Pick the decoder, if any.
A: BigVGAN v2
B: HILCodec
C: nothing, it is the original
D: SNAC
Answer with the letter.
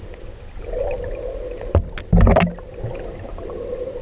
C